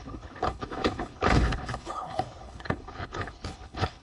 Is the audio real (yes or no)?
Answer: no